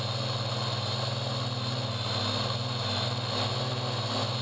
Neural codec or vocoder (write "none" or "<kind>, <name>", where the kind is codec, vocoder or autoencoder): none